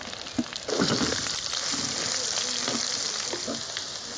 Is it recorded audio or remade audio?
recorded